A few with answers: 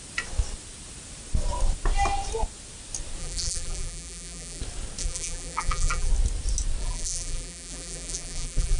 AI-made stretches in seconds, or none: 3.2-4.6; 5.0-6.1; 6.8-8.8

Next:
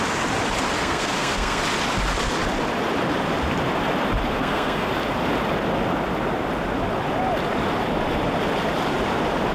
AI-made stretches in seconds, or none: 0.8-1.6; 4.3-4.9

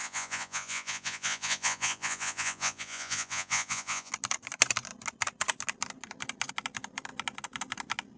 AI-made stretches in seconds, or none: 0.0-4.1

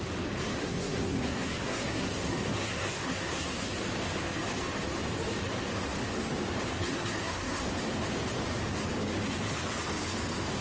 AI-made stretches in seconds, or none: 0.6-3.7; 6.8-7.7

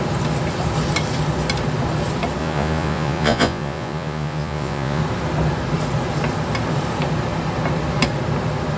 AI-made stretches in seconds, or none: 2.4-5.0